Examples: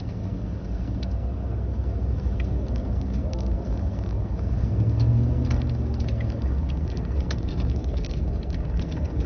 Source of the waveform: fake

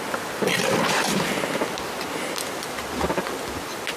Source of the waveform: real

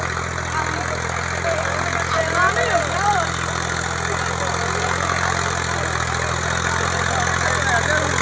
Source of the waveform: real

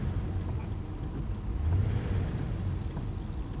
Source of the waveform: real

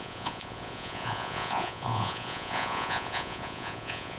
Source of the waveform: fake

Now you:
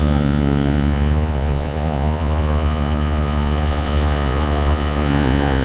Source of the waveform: fake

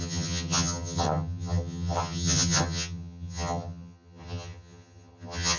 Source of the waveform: fake